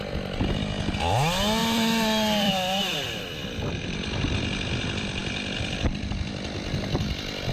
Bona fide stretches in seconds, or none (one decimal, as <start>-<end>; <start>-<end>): 0.0-1.6; 4.2-5.2; 6.3-7.5